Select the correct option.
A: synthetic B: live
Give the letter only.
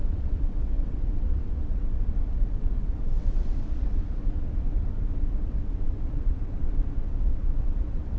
A